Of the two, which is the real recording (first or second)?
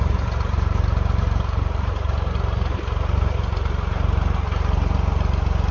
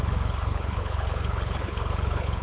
first